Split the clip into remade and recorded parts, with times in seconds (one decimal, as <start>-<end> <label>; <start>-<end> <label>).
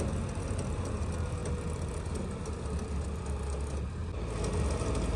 0.0-5.2 recorded